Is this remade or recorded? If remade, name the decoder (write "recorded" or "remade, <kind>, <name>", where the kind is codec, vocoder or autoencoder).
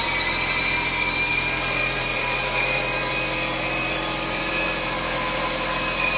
remade, vocoder, BigVGAN v2